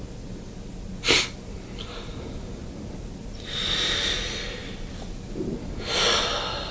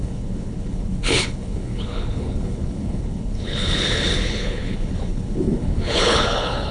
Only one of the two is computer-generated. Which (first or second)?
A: second